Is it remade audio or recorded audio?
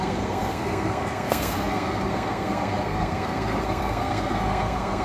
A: remade